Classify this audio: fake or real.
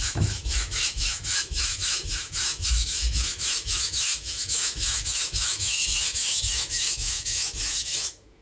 fake